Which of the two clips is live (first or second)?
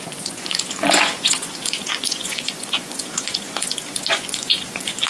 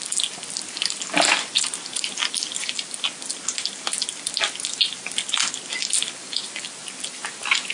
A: second